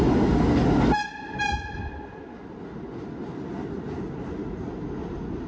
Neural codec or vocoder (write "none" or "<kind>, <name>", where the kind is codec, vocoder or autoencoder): none